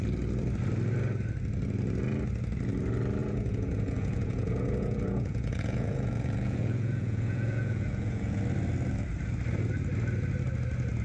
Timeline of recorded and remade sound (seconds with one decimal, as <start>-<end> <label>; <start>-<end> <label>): 0.0-3.2 recorded; 3.2-8.4 remade; 8.4-11.0 recorded